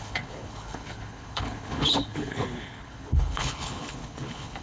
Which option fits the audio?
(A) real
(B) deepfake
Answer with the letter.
B